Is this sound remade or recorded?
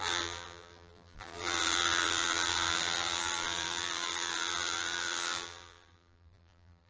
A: remade